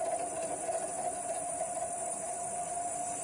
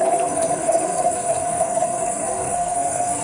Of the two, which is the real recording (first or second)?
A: first